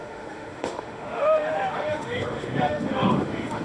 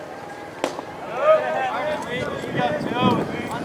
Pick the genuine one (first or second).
second